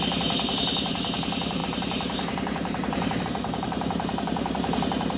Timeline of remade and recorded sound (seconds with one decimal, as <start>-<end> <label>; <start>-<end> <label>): 0.0-5.2 remade